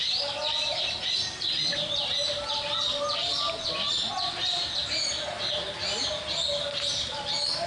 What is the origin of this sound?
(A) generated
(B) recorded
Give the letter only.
B